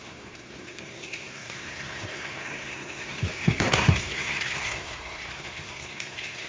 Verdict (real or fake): fake